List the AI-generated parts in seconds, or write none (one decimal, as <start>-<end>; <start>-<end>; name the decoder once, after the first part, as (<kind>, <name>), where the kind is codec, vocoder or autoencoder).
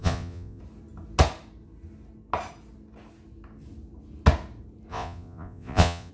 0.0-0.6 (vocoder, Vocos); 4.9-6.1